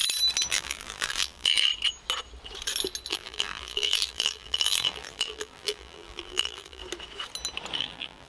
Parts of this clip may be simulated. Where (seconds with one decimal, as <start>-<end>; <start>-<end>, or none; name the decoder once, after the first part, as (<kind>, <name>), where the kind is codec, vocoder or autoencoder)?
0.5-1.7 (vocoder, BigVGAN v2); 3.1-6.8; 7.8-8.3